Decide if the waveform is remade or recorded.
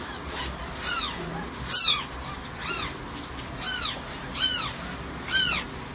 recorded